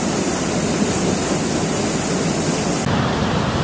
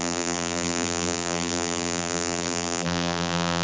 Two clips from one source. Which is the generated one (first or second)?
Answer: second